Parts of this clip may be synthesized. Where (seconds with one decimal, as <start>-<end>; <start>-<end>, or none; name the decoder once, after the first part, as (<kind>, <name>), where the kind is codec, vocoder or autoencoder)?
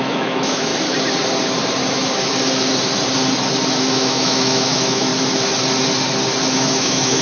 0.0-0.7 (autoencoder, DAC-VAE); 3.8-5.1; 6.4-7.2